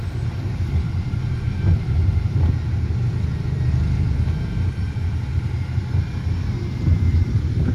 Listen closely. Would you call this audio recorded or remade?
remade